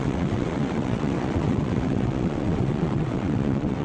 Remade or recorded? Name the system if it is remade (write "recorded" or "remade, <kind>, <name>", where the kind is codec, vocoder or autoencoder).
remade, vocoder, WaveNeXt